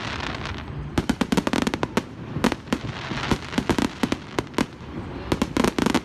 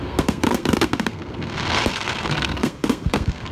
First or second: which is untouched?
first